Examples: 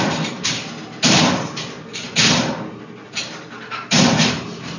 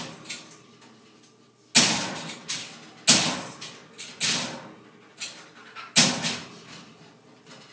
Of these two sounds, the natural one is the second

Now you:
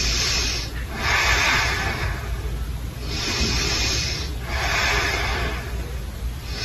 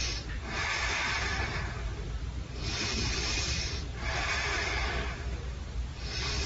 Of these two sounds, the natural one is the first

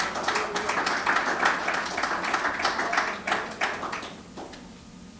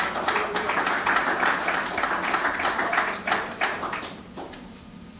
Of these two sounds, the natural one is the first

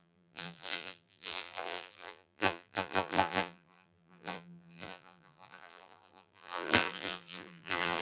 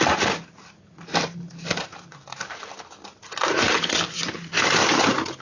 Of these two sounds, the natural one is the second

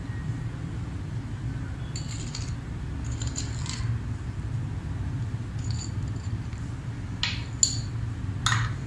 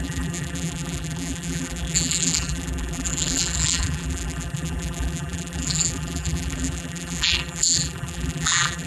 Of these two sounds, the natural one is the first